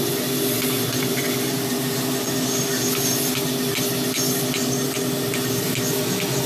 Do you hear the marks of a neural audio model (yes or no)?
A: no